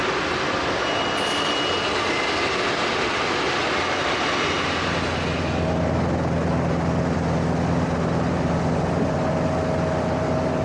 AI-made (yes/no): no